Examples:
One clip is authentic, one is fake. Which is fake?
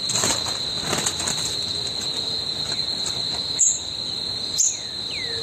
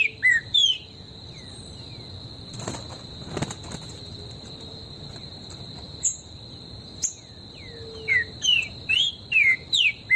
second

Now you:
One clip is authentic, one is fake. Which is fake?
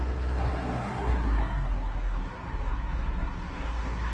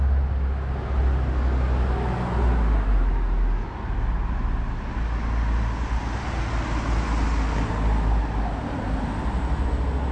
first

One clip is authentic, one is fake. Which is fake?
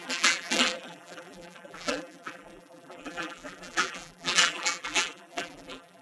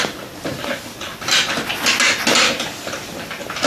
first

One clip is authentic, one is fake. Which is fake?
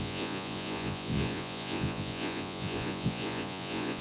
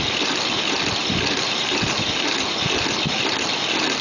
first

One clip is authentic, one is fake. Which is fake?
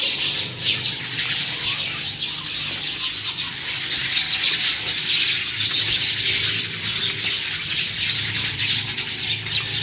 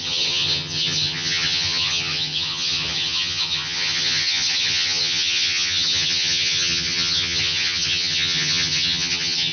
second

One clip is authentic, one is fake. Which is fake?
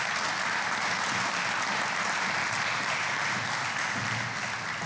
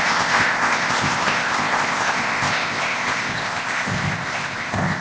second